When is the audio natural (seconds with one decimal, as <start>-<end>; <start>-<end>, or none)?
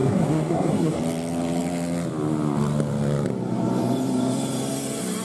1.0-5.2